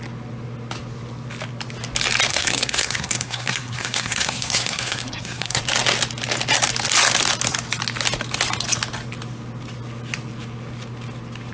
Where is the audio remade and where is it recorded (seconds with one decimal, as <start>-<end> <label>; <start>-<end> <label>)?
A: 0.0-2.3 recorded; 2.3-5.6 remade; 5.6-11.5 recorded